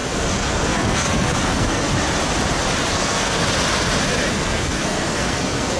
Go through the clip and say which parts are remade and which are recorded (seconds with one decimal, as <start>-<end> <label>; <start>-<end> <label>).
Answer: 0.0-1.9 remade; 1.9-2.9 recorded; 2.9-3.4 remade; 3.4-4.3 recorded; 4.3-5.8 remade